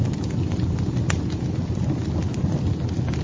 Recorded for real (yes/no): yes